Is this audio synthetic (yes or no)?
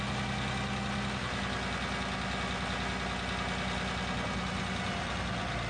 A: no